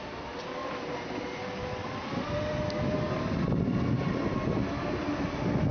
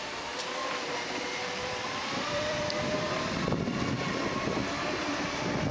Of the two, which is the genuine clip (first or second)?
first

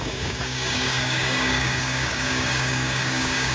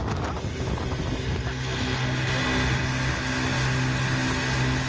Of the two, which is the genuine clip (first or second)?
second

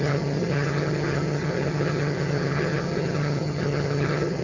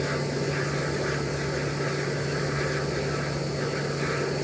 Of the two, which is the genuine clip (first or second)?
second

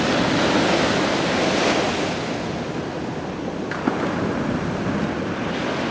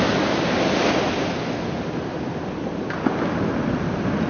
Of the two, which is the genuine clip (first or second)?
second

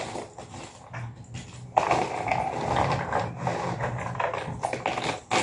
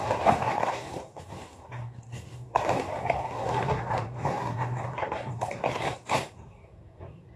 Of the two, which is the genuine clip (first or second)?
first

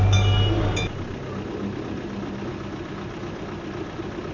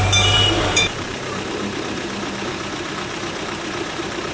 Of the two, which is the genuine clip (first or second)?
first